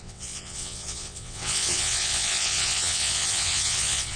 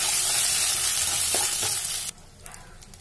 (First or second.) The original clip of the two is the second